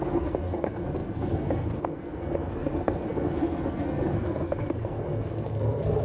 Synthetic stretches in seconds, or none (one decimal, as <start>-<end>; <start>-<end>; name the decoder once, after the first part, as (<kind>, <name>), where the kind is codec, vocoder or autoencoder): 0.0-6.0 (codec, SNAC)